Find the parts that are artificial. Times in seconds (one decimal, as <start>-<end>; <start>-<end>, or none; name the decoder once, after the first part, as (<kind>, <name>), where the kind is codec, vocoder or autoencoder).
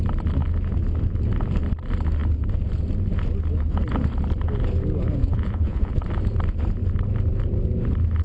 5.2-5.9 (vocoder, Vocos)